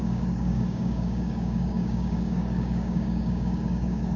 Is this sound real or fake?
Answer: fake